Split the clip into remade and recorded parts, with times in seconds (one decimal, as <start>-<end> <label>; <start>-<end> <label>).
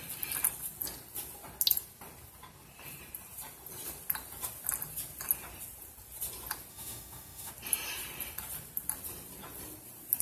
0.0-6.7 recorded; 6.7-7.5 remade; 7.5-10.2 recorded